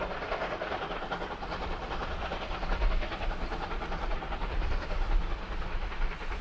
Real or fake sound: real